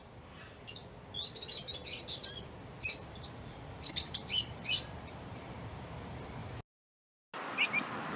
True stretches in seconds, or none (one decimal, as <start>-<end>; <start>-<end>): 0.8-1.4; 6.4-8.2